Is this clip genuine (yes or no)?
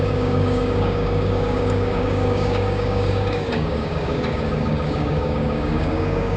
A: no